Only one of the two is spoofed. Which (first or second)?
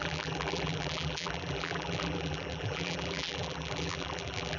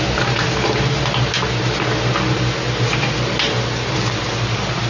first